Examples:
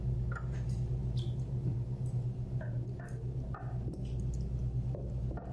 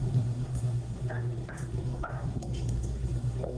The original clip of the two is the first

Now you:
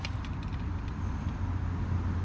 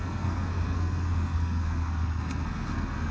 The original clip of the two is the first